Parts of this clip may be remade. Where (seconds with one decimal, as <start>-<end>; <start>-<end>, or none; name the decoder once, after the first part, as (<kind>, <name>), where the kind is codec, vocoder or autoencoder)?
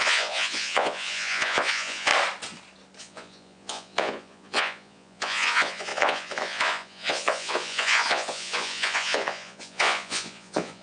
0.0-2.1 (vocoder, Vocos); 3.0-10.8